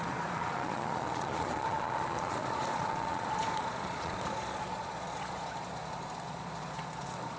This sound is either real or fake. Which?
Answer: fake